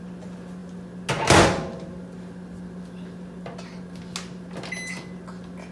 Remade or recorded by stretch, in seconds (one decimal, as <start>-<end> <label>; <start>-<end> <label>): 0.0-5.7 recorded